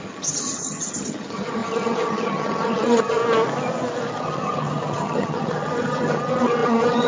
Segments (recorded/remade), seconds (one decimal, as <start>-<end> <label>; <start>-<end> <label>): 0.0-3.2 remade; 3.2-4.1 recorded; 4.1-7.1 remade